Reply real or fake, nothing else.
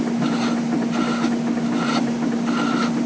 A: real